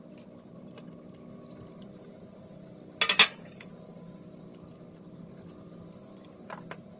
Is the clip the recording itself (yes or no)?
yes